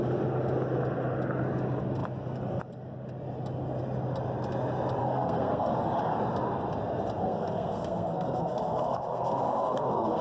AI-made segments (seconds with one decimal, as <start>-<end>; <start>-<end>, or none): 5.0-5.7; 7.2-10.2